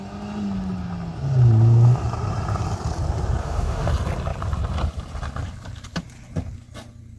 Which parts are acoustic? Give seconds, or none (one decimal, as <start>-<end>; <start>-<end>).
0.0-3.4; 3.9-7.2